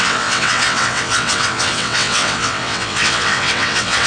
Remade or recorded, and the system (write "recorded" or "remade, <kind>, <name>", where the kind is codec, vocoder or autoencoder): remade, vocoder, WaveNeXt